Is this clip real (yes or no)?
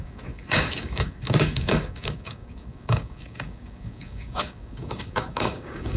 no